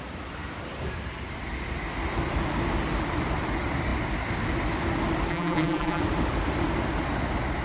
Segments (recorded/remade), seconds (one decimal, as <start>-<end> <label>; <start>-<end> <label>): 0.0-5.3 recorded; 5.3-6.0 remade; 6.0-7.6 recorded